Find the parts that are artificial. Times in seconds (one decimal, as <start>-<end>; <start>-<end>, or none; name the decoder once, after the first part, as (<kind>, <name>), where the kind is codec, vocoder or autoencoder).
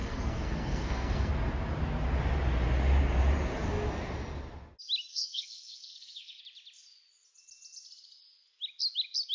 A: 0.0-1.3 (codec, SNAC); 5.1-6.4